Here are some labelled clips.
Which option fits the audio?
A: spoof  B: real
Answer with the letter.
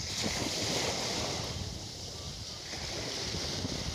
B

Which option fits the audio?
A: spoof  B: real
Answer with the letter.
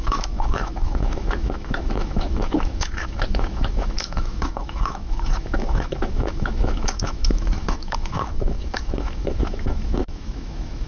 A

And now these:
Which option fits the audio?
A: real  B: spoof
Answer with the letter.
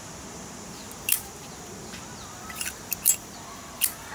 A